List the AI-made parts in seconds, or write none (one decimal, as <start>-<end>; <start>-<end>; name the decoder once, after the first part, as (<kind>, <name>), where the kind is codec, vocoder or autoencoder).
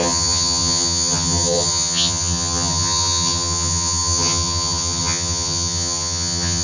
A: 0.0-6.6 (vocoder, HiFi-GAN)